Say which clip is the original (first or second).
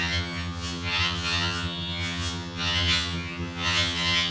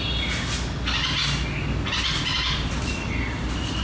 second